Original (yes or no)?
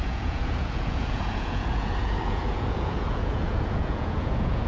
no